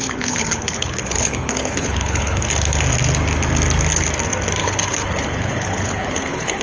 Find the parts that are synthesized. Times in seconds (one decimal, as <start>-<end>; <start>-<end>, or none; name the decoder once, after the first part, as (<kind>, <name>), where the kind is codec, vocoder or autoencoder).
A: 0.0-2.4 (codec, HILCodec); 4.6-6.6